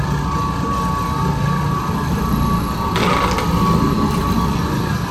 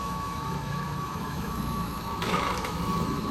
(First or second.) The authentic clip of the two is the first